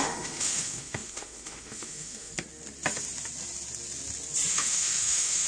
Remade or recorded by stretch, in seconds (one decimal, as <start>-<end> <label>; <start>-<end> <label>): 0.0-2.3 remade; 2.3-4.5 recorded; 4.5-5.5 remade